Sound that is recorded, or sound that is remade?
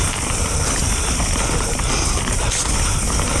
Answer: recorded